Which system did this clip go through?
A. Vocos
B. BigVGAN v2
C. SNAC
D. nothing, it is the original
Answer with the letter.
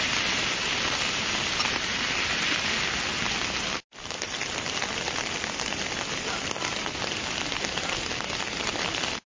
D